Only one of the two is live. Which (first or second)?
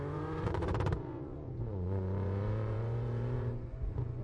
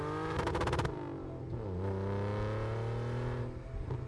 second